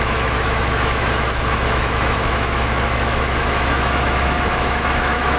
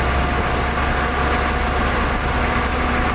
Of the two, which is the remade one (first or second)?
first